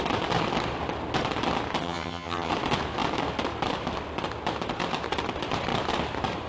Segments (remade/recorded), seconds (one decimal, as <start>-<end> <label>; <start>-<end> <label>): 0.0-1.8 recorded; 1.8-2.5 remade; 2.5-6.5 recorded